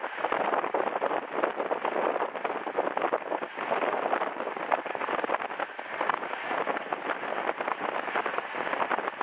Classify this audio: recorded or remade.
recorded